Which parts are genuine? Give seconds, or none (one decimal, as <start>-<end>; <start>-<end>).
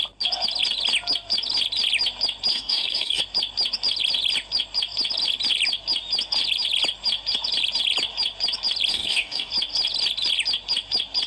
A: 0.0-2.5; 3.2-8.9; 9.5-11.3